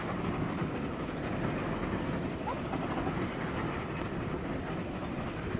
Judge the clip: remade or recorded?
recorded